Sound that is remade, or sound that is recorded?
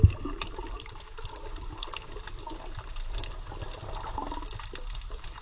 recorded